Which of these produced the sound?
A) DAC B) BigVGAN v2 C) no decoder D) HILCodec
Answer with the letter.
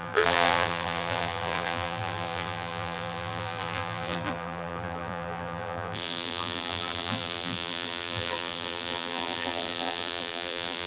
B